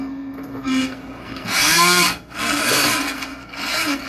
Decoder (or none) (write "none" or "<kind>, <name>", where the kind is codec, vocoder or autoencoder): codec, SNAC